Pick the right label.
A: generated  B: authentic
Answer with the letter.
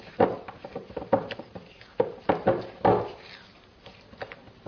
B